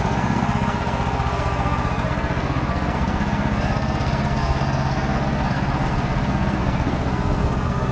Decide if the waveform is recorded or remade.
remade